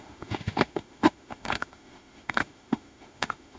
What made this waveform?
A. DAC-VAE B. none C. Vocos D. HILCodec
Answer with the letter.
A